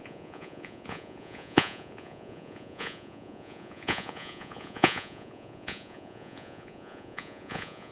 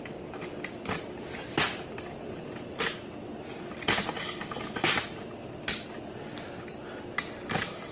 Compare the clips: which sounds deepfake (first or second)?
first